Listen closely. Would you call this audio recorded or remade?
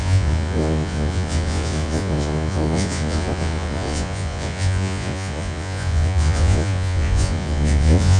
remade